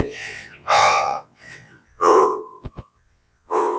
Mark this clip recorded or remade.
remade